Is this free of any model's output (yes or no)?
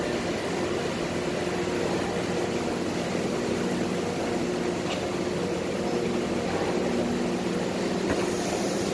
yes